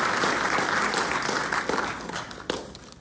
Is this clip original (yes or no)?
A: yes